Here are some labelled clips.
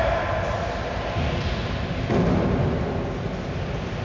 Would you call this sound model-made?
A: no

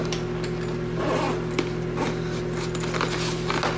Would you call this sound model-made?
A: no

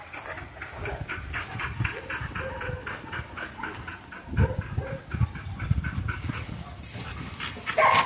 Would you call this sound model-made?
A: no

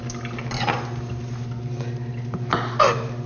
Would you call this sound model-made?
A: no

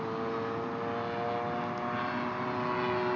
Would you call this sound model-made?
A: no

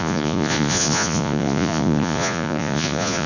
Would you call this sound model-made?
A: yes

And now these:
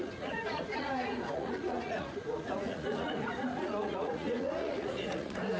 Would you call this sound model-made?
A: yes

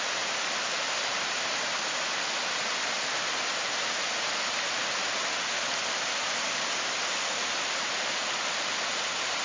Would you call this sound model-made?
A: no